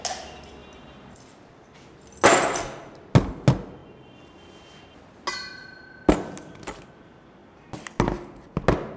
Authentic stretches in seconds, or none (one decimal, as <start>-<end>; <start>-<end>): 0.0-9.0